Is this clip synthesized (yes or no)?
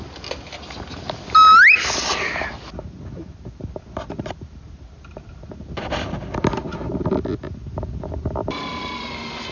no